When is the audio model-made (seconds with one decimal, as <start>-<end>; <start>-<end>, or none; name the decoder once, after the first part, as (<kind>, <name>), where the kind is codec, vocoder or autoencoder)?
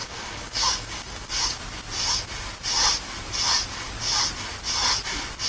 0.0-1.6 (codec, DAC)